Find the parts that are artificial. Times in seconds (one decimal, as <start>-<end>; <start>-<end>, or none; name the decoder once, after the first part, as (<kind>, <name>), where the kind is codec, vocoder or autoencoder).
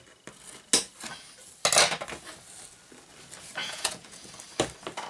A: 3.6-4.4 (vocoder, Vocos)